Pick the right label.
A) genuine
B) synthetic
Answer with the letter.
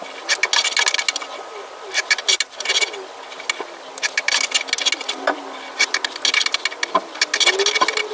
A